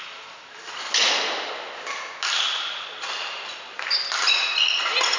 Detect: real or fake real